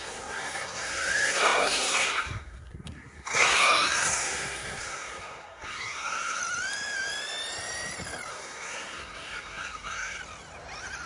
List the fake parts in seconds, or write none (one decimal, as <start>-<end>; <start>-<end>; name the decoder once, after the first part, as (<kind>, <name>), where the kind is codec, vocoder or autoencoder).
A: 0.0-6.4 (codec, SNAC); 8.3-10.2

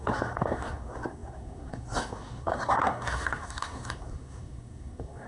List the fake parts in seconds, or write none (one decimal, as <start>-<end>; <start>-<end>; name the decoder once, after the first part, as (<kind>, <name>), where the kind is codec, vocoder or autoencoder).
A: 0.0-5.3 (codec, SNAC)